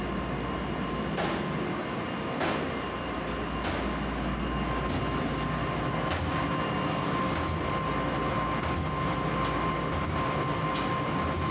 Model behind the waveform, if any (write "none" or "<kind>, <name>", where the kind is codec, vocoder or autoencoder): none